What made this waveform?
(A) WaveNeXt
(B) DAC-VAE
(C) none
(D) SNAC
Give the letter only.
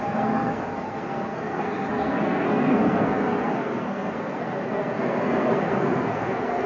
D